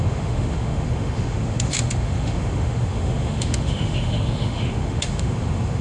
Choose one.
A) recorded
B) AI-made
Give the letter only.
B